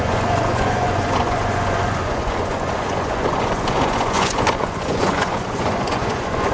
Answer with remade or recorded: remade